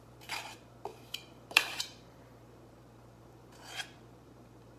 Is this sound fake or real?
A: fake